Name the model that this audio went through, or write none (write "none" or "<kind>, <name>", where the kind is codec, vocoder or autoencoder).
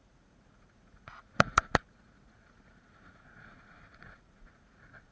vocoder, Vocos